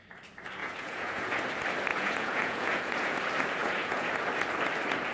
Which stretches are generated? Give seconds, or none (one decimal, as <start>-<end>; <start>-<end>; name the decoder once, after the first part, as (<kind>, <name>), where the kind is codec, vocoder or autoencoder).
0.6-1.4 (vocoder, Vocos); 1.9-3.2; 3.6-4.1